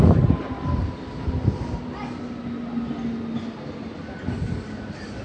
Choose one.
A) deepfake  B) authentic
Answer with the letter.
B